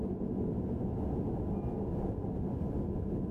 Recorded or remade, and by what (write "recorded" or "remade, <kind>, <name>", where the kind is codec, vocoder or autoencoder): recorded